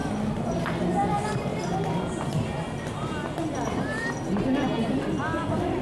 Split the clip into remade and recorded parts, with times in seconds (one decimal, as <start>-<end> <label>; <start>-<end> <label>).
0.0-5.8 recorded